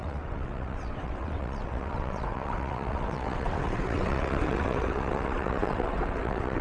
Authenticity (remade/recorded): remade